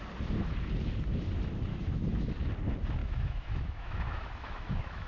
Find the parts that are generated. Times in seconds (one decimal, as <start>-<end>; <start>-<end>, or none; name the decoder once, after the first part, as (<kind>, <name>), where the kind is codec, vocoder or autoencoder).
1.7-2.3 (autoencoder, DAC-VAE); 3.0-5.1